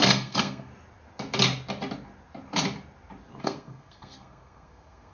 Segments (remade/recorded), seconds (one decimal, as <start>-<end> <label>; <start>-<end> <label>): 0.0-0.7 remade; 0.7-3.4 recorded; 3.4-5.1 remade